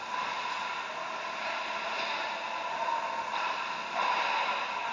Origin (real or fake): real